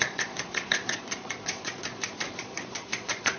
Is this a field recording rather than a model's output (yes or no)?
no